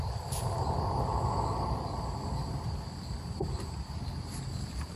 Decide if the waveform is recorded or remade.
recorded